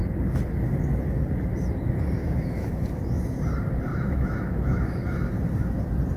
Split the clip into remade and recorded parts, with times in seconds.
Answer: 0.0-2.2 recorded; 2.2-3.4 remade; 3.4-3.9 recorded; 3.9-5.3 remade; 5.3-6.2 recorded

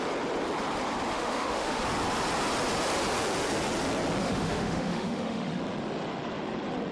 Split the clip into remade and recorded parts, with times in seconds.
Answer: 0.0-1.1 recorded; 1.1-1.8 remade; 1.8-4.2 recorded; 4.2-5.6 remade; 5.6-6.9 recorded

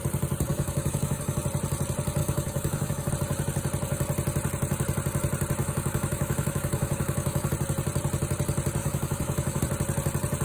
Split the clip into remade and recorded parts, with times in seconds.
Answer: 0.0-0.5 recorded; 0.5-1.4 remade; 1.4-2.2 recorded; 2.2-3.1 remade; 3.1-5.6 recorded; 5.6-7.5 remade; 7.5-8.8 recorded; 8.8-9.6 remade; 9.6-10.4 recorded